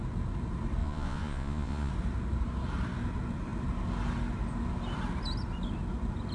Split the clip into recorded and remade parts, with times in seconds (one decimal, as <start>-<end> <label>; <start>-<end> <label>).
0.0-0.8 recorded; 0.8-1.9 remade; 1.9-6.3 recorded